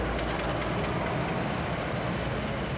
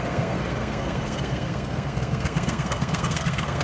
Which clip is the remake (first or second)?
second